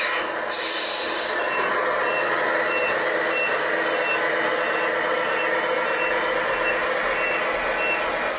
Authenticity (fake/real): real